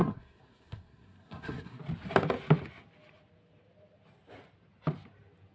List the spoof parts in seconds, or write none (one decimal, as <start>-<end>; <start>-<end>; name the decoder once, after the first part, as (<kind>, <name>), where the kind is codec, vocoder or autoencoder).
0.0-1.8 (codec, SNAC)